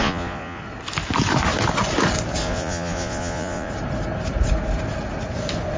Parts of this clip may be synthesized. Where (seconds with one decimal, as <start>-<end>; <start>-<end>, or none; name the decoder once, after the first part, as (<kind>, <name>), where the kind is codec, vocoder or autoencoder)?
0.0-0.6 (vocoder, Vocos); 2.4-3.7